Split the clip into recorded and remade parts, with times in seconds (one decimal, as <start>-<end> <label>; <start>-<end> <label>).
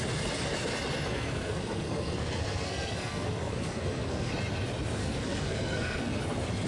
0.0-1.1 recorded; 1.1-4.3 remade; 4.3-5.0 recorded; 5.0-6.2 remade; 6.2-6.7 recorded